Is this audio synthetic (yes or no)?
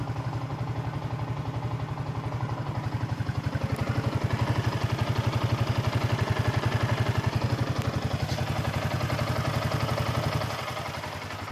no